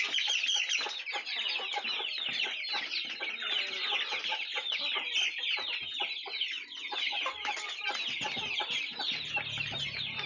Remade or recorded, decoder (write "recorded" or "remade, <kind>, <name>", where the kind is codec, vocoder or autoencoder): recorded